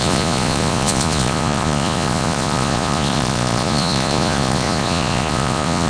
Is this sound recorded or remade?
remade